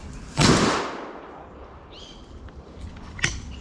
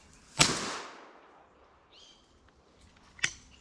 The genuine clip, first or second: second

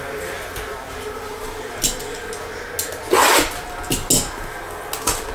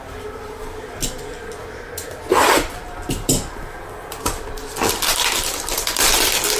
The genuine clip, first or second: first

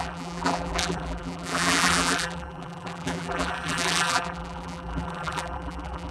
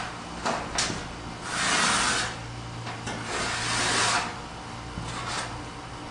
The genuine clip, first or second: second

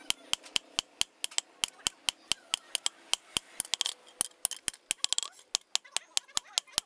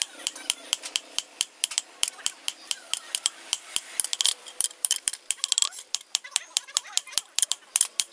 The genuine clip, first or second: first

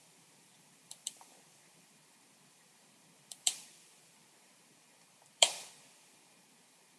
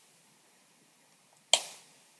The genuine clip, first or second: second